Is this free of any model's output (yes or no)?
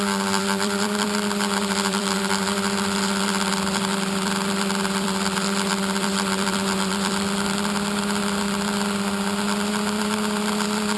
no